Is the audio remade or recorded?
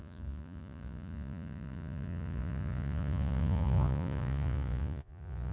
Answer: remade